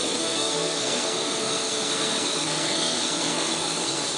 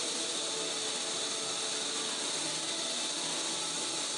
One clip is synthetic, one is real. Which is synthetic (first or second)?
first